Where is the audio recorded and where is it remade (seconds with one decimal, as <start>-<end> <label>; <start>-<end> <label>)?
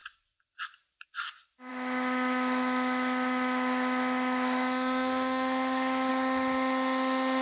0.0-1.7 recorded; 1.7-6.1 remade; 6.1-7.4 recorded